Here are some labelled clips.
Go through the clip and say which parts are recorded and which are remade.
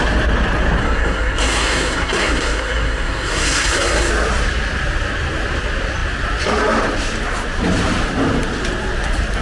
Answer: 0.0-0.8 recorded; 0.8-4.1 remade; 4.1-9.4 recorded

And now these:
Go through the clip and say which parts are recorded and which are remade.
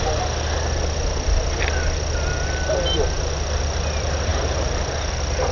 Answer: 0.0-5.5 recorded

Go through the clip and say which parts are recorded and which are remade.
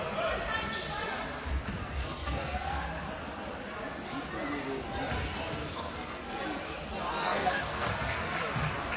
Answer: 0.0-1.8 recorded; 1.8-2.8 remade; 2.8-5.7 recorded; 5.7-6.4 remade; 6.4-7.1 recorded; 7.1-8.2 remade; 8.2-9.0 recorded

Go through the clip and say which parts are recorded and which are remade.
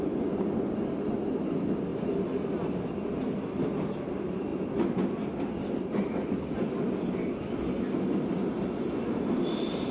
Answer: 0.0-9.9 recorded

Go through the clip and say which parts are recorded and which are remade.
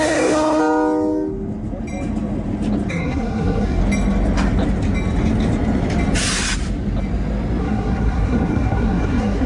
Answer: 0.0-0.6 remade; 0.6-2.9 recorded; 2.9-3.8 remade; 3.8-7.6 recorded; 7.6-9.5 remade